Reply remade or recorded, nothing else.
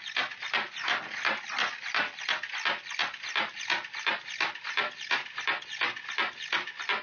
recorded